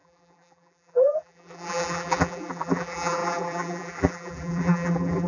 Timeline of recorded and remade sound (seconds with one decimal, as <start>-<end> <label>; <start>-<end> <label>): 0.0-5.3 remade